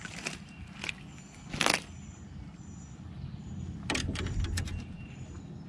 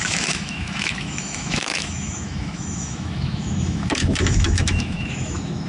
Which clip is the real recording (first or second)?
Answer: first